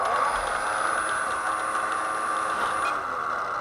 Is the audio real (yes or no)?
yes